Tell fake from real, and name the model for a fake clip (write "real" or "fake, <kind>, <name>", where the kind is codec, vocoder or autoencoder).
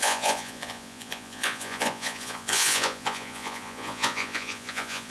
fake, vocoder, Vocos